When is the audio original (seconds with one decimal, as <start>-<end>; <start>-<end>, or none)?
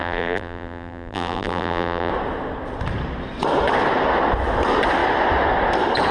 2.1-6.1